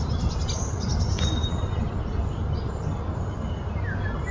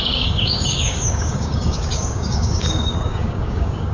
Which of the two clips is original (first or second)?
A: first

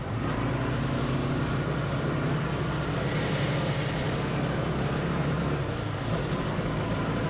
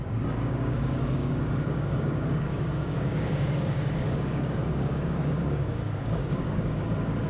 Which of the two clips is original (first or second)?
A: first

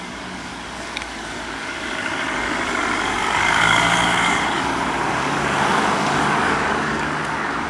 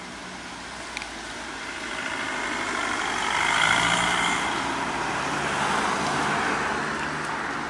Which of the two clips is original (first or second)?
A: second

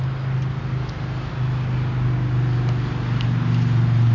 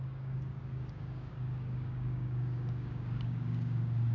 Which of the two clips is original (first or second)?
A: first